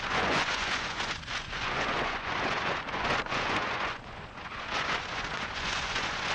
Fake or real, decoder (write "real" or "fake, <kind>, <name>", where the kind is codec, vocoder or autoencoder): fake, vocoder, Vocos